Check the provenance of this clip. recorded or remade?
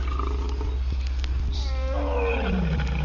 recorded